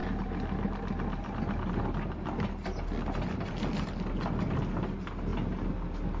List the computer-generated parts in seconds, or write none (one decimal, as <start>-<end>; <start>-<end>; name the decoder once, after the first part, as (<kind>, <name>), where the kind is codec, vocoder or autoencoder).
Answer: none